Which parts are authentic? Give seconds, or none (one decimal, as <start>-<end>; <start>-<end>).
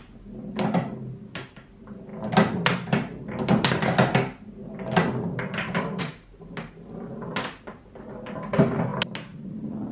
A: 0.0-9.9